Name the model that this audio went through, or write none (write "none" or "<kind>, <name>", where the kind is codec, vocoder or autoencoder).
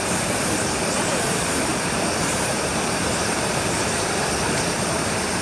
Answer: vocoder, BigVGAN v2